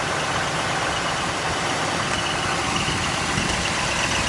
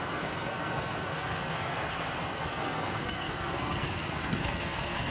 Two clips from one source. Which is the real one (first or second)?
first